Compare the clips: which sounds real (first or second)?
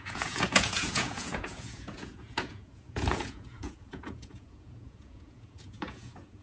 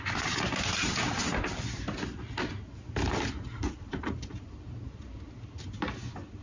second